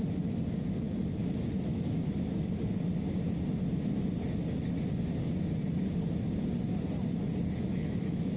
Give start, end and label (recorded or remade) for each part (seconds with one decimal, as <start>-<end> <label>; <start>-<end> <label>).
0.0-1.7 recorded; 1.7-2.3 remade; 2.3-7.7 recorded; 7.7-8.4 remade